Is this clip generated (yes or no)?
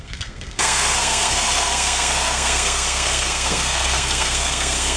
yes